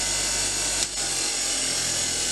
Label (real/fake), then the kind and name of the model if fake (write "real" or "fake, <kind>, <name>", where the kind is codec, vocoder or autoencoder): real